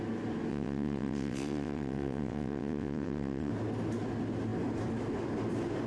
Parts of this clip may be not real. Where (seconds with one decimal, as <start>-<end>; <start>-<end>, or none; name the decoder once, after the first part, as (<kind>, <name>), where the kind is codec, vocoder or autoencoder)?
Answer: 0.5-3.5 (vocoder, WaveNeXt)